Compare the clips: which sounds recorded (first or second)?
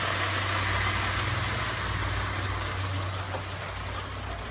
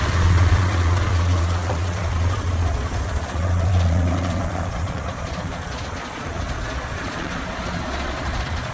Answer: first